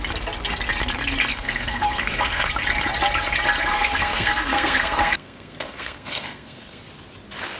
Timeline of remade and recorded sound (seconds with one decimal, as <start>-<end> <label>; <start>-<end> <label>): 0.0-1.3 recorded; 1.3-2.5 remade; 2.5-3.7 recorded; 3.7-6.8 remade; 6.8-7.6 recorded